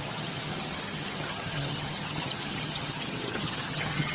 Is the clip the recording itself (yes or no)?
no